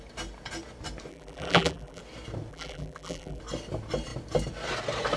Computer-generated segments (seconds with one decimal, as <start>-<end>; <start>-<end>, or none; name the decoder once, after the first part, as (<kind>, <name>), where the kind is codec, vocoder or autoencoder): 1.1-2.0 (vocoder, BigVGAN v2); 2.5-3.4